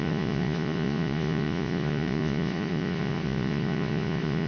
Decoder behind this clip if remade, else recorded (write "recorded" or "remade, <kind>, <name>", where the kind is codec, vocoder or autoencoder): remade, vocoder, Vocos